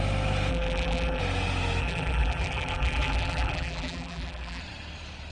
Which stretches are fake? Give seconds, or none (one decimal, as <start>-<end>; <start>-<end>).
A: 0.5-1.2; 1.8-4.6